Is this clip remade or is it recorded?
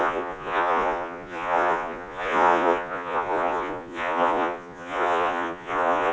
remade